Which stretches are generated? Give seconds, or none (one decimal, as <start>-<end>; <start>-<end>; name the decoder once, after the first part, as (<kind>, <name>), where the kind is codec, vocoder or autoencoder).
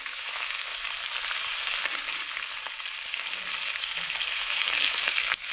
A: 0.0-0.7 (autoencoder, DAC-VAE); 3.7-5.5